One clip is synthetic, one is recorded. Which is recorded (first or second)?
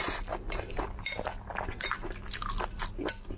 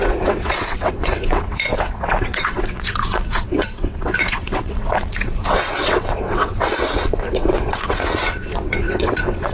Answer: first